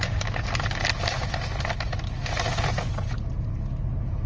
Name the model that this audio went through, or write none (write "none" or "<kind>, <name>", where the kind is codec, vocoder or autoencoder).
none